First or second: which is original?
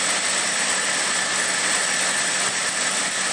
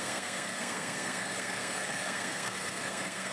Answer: first